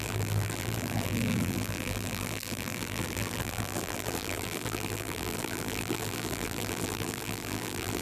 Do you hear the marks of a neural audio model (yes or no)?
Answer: yes